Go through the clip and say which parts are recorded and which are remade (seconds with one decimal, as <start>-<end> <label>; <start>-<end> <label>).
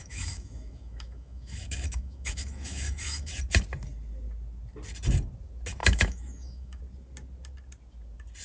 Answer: 0.0-3.3 remade; 3.3-5.8 recorded; 5.8-6.8 remade; 6.8-8.4 recorded